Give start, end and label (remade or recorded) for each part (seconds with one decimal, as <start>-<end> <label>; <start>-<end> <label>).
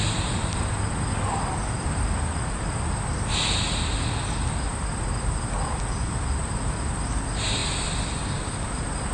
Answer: 0.0-9.1 recorded